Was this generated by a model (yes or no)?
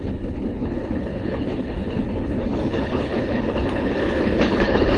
yes